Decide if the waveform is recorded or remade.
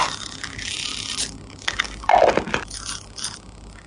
recorded